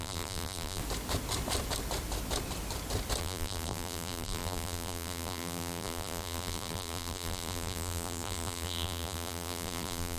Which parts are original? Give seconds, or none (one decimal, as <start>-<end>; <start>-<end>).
0.8-3.2